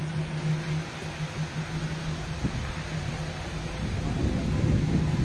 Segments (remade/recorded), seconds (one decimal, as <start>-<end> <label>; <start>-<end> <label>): 0.0-5.2 recorded